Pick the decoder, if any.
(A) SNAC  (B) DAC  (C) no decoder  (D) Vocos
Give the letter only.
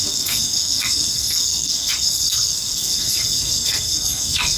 A